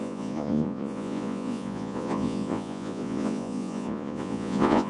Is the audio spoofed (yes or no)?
yes